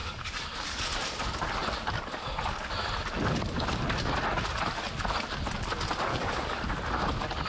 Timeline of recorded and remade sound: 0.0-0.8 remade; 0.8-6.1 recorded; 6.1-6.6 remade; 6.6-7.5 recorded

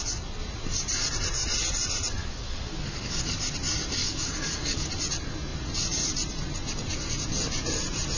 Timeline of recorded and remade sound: 0.0-2.2 recorded; 2.2-3.4 remade; 3.4-4.0 recorded; 4.0-4.9 remade; 4.9-8.2 recorded

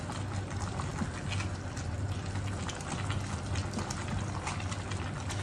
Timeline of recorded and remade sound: 0.0-5.4 recorded

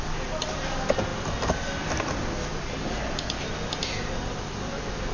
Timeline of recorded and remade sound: 0.0-5.1 recorded

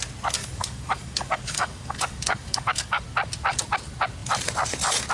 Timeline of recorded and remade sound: 0.0-0.4 recorded; 0.4-3.0 remade; 3.0-5.1 recorded

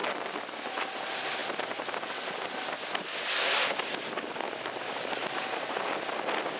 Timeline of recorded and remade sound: 0.0-4.9 recorded; 4.9-5.6 remade; 5.6-6.6 recorded

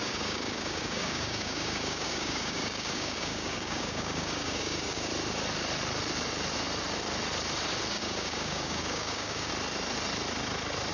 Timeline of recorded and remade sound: 0.0-5.1 remade; 5.1-7.9 recorded; 7.9-9.5 remade; 9.5-10.9 recorded